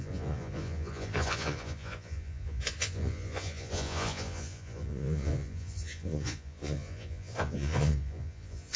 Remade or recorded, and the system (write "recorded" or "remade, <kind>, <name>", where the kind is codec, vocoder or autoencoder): remade, vocoder, Vocos